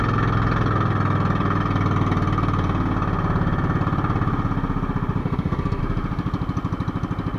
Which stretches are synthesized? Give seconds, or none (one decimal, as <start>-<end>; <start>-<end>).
5.2-5.8